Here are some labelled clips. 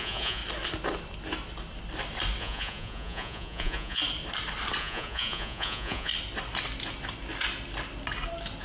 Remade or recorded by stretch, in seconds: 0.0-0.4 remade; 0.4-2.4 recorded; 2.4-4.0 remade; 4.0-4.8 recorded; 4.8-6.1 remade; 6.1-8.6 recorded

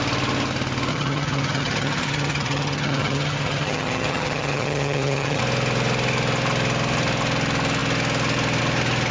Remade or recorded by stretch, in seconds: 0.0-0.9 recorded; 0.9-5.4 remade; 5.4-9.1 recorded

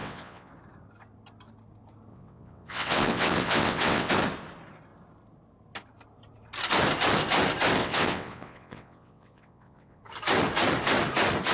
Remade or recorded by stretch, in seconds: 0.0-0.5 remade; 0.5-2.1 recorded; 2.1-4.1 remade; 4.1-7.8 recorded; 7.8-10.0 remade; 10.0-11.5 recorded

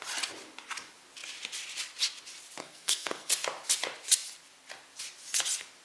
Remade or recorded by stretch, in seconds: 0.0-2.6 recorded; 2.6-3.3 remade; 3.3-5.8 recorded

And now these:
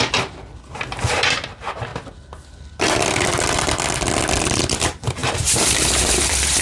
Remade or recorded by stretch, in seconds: 0.0-1.9 remade; 1.9-4.4 recorded; 4.4-6.6 remade

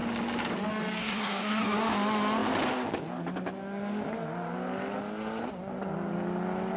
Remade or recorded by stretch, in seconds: 0.0-1.0 recorded; 1.0-1.6 remade; 1.6-6.8 recorded

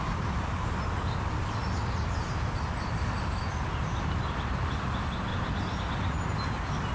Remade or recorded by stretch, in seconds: 0.0-6.9 recorded